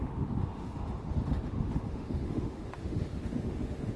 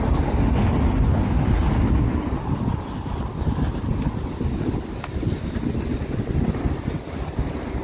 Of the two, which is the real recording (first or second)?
second